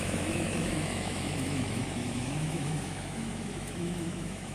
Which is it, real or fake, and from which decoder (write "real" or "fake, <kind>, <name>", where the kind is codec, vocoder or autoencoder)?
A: fake, autoencoder, DAC-VAE